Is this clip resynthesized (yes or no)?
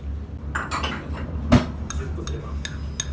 no